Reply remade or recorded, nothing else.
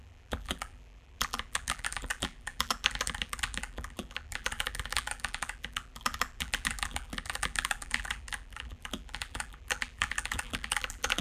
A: remade